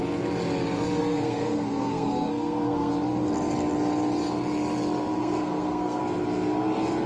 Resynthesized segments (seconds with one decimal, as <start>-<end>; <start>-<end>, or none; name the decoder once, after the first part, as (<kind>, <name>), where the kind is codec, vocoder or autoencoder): 1.0-2.9 (codec, SNAC); 5.2-6.0